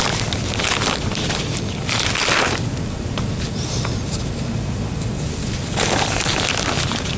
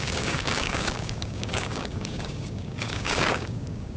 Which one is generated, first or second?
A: second